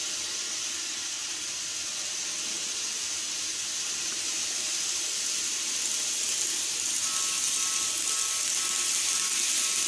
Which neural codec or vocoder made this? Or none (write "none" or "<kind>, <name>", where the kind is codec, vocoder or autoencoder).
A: none